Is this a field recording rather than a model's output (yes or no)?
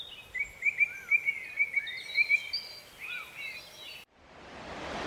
yes